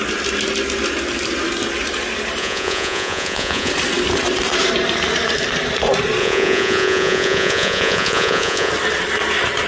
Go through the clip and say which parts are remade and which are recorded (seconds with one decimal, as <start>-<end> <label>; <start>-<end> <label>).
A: 0.0-2.4 recorded; 2.4-3.7 remade; 3.7-6.2 recorded; 6.2-8.7 remade; 8.7-9.7 recorded

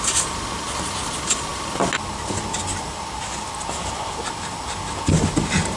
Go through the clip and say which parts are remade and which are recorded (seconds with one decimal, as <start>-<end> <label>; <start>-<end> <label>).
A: 0.0-5.8 recorded

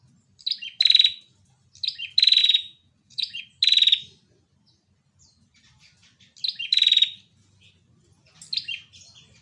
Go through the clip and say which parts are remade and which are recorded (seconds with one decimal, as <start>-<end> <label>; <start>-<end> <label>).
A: 0.0-2.4 recorded; 2.4-3.4 remade; 3.4-9.4 recorded

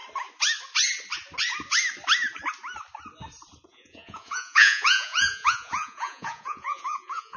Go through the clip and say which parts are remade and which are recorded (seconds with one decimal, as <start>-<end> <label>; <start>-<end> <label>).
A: 0.0-3.7 recorded; 3.7-7.4 remade